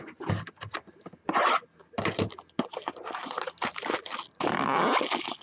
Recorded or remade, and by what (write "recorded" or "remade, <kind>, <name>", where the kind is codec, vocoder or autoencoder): recorded